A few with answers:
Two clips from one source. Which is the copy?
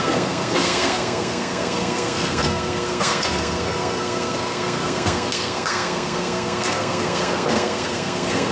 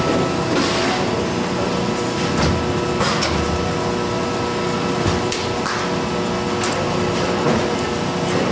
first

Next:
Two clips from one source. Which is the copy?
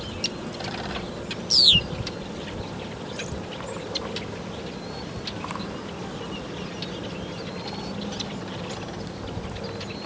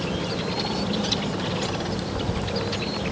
second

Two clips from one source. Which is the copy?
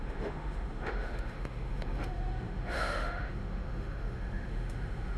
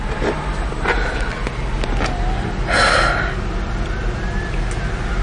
first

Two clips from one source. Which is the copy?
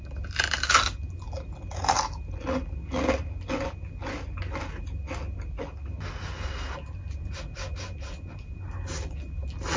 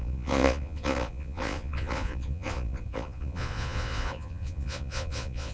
second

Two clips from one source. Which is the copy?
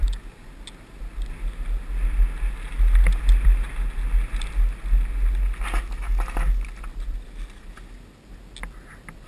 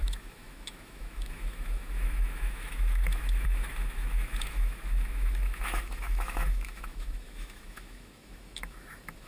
second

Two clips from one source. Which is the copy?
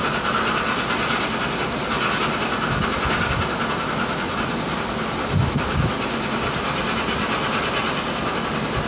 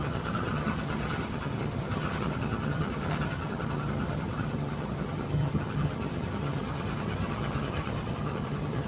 second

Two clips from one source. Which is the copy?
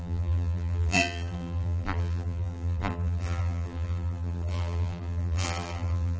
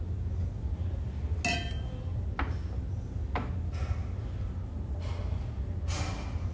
first